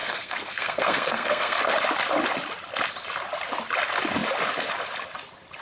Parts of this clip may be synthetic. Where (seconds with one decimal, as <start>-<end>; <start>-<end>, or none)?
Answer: 0.0-1.6